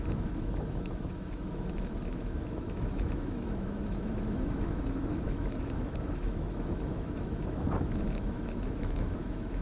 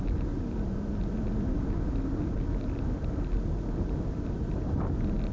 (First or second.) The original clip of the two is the second